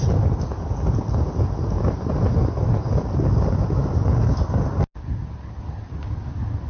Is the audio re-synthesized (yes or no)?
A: no